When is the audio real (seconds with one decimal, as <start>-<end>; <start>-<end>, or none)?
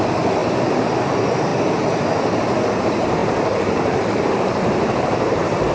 1.5-2.8